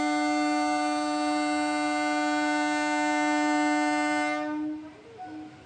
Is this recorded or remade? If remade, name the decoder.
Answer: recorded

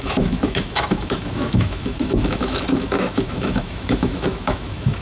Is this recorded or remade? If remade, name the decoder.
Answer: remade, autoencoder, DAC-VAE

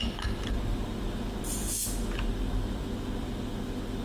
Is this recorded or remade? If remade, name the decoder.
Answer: recorded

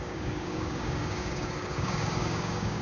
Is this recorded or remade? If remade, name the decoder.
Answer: remade, codec, DAC